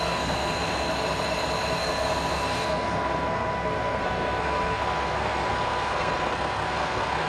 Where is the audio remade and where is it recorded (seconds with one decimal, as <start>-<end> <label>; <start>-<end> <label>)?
0.0-0.9 remade; 0.9-1.8 recorded; 1.8-7.3 remade